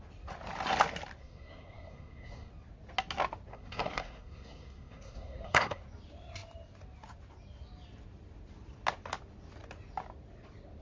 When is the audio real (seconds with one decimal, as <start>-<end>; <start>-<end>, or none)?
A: 0.0-1.2; 2.5-3.5; 5.8-10.8